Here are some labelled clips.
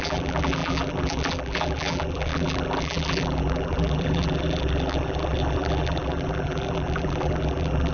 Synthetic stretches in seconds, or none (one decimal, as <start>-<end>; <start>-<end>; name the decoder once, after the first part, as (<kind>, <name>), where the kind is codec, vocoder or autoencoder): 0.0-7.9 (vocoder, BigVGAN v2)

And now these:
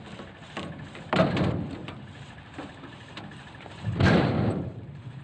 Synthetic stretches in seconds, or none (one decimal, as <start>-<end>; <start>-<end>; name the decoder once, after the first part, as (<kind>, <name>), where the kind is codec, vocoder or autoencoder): 1.8-5.2 (vocoder, BigVGAN v2)

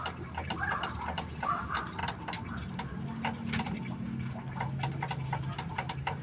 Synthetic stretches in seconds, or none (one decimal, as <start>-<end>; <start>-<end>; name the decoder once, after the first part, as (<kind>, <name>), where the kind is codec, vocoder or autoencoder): 0.0-2.0 (vocoder, BigVGAN v2); 5.7-6.2

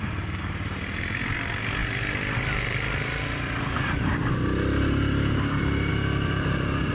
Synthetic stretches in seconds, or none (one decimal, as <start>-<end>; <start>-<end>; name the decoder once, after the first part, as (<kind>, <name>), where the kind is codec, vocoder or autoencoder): 0.0-6.9 (vocoder, BigVGAN v2)